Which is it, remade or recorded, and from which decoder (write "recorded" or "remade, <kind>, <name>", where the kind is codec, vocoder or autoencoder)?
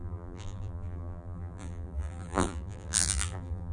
remade, vocoder, BigVGAN v2